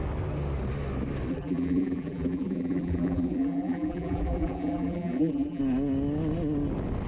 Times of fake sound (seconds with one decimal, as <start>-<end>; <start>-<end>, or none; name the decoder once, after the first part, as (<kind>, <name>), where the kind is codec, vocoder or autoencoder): 1.3-5.6 (vocoder, BigVGAN v2)